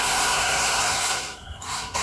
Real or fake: fake